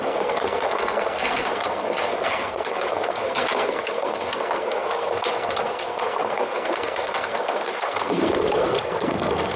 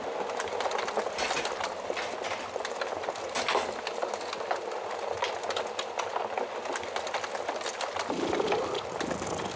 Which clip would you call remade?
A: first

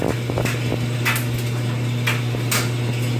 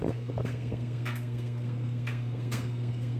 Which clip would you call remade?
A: second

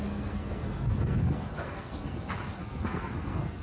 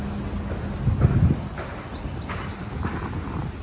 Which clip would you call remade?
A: first